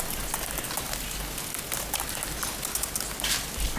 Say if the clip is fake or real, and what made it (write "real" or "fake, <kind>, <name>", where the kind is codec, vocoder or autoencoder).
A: real